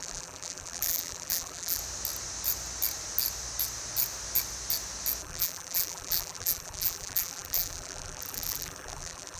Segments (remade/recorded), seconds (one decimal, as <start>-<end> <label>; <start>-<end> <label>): 0.0-1.8 remade; 1.8-5.2 recorded; 5.2-9.4 remade